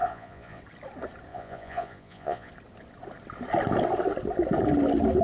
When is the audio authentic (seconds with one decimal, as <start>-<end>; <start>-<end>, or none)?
0.6-1.3; 2.5-5.2